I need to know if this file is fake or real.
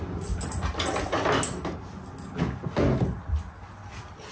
real